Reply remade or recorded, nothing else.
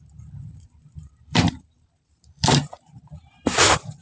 remade